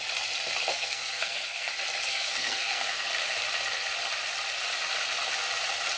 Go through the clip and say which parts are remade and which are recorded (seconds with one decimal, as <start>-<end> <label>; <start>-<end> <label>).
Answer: 0.0-0.7 recorded; 0.7-1.7 remade; 1.7-2.1 recorded; 2.1-3.1 remade; 3.1-6.0 recorded

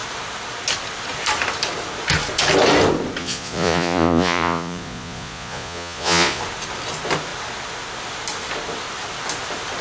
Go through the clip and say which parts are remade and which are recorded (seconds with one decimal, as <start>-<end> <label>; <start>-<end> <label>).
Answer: 0.0-3.2 recorded; 3.2-6.4 remade; 6.4-9.8 recorded

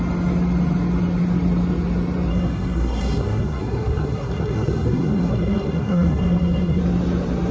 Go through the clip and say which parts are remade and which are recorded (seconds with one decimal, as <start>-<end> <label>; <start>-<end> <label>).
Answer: 0.0-2.3 recorded; 2.3-6.8 remade; 6.8-7.5 recorded

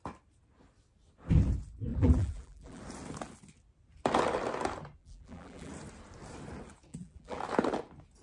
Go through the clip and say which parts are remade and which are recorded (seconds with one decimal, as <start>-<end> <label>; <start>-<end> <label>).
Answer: 0.0-1.9 recorded; 1.9-2.8 remade; 2.8-5.0 recorded; 5.0-5.7 remade; 5.7-6.9 recorded; 6.9-7.4 remade; 7.4-8.2 recorded

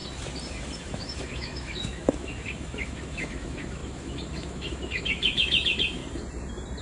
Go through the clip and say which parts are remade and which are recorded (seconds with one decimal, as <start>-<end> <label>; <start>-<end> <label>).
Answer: 0.0-0.8 recorded; 0.8-6.0 remade; 6.0-6.8 recorded